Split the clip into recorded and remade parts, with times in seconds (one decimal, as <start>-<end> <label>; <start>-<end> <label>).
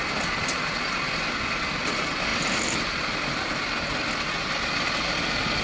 0.0-5.6 recorded